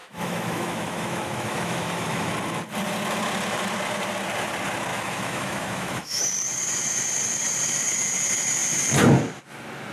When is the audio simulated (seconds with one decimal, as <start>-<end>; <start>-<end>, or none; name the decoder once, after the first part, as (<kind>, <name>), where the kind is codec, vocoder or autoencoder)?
0.0-2.3 (autoencoder, DAC-VAE); 4.9-6.2